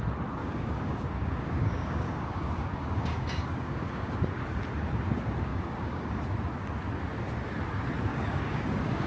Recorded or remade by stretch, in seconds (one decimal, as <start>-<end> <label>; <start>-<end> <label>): 0.0-0.4 recorded; 0.4-4.1 remade; 4.1-5.5 recorded; 5.5-6.2 remade; 6.2-8.1 recorded; 8.1-9.1 remade